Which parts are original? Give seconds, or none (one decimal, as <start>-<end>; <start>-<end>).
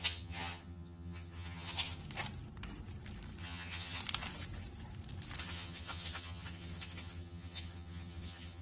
2.0-3.4; 4.0-5.4